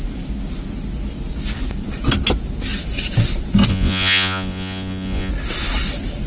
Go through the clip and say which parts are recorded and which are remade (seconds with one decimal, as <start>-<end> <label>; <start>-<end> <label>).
0.0-3.7 recorded; 3.7-5.3 remade; 5.3-6.3 recorded